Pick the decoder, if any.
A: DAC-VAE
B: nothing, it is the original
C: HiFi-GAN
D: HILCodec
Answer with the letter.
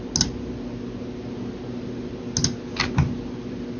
B